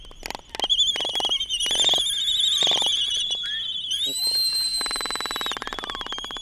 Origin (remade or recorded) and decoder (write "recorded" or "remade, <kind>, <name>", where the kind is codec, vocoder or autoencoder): recorded